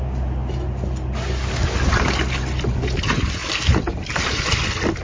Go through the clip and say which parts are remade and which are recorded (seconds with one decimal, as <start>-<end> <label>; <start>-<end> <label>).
0.0-5.0 recorded